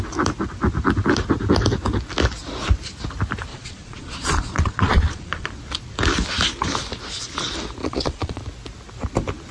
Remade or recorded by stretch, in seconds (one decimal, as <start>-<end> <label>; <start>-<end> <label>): 0.0-3.5 recorded; 3.5-5.5 remade; 5.5-7.8 recorded; 7.8-8.4 remade; 8.4-9.5 recorded